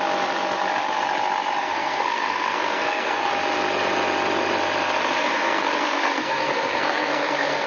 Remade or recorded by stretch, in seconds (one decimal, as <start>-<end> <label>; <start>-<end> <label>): 0.0-1.6 recorded; 1.6-3.3 remade; 3.3-5.2 recorded; 5.2-7.7 remade

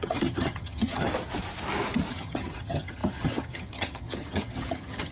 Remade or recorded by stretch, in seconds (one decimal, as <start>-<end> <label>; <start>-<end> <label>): 0.0-1.1 remade; 1.1-2.1 recorded; 2.1-5.1 remade

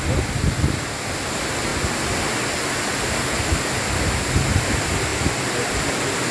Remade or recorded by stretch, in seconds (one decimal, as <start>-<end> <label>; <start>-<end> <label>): 0.0-6.3 recorded

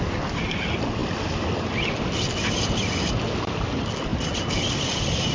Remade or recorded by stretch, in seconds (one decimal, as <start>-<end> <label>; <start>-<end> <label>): 0.0-5.3 recorded

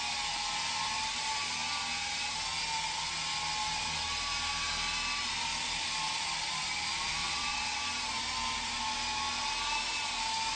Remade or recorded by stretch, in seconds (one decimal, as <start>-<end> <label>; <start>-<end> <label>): 0.0-7.2 recorded; 7.2-7.8 remade; 7.8-10.6 recorded